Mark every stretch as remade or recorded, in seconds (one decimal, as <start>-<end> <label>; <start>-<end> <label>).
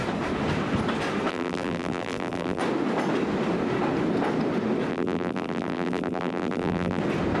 0.0-1.3 recorded; 1.3-2.6 remade; 2.6-4.9 recorded; 4.9-7.0 remade; 7.0-7.4 recorded